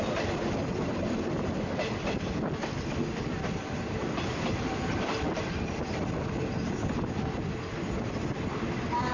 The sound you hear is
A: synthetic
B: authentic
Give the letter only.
B